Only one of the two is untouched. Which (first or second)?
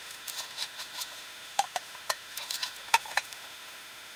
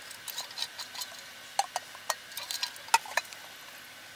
second